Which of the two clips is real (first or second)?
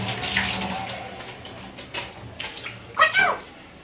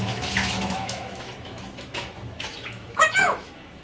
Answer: first